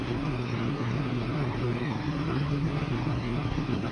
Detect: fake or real fake